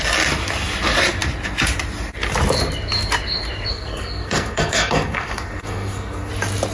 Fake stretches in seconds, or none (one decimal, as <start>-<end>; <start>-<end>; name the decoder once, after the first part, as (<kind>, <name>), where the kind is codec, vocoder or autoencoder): 3.7-6.3 (codec, SNAC)